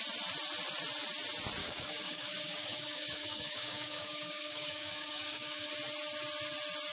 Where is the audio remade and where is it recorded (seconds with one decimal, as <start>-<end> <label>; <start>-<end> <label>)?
0.0-1.6 recorded; 1.6-5.7 remade; 5.7-6.9 recorded